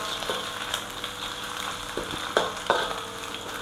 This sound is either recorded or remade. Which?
recorded